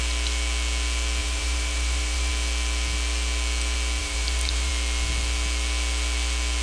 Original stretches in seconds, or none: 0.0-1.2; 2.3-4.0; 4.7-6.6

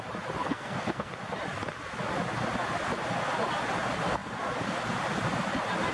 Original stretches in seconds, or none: 0.0-0.4; 1.1-5.9

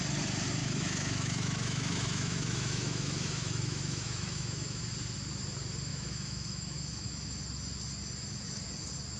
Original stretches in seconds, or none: 0.0-0.6; 4.8-5.9; 7.4-9.2

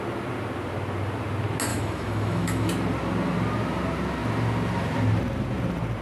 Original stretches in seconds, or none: 0.0-1.7; 2.7-6.0

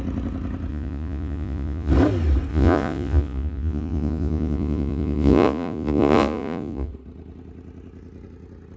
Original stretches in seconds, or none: 0.0-0.7; 1.9-2.5; 6.9-8.8

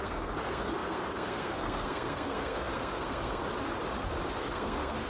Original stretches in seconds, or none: 3.4-4.3

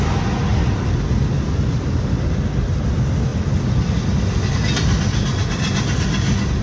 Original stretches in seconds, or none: 0.0-0.5; 1.2-6.6